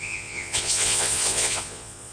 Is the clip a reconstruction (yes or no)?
yes